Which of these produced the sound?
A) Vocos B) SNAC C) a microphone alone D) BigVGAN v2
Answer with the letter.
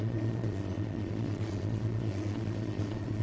A